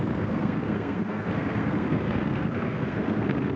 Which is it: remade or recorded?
remade